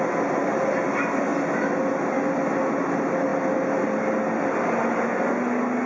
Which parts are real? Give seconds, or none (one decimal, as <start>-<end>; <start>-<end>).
0.0-5.9